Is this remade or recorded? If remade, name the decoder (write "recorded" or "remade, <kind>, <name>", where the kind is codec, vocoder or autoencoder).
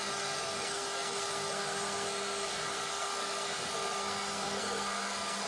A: remade, codec, SNAC